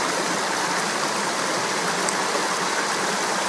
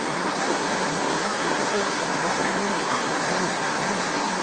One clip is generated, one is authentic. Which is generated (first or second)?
second